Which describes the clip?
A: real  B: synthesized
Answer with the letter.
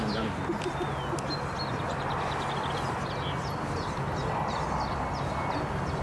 A